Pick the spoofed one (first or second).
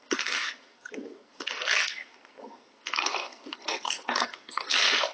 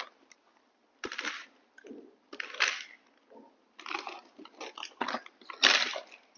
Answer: first